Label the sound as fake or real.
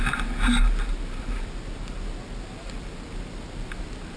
real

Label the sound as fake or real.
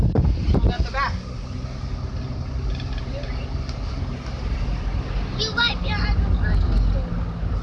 real